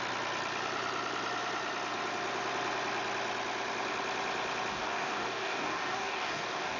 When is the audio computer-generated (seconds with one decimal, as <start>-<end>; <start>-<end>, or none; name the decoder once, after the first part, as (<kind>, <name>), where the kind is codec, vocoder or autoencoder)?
4.7-6.8 (codec, DAC)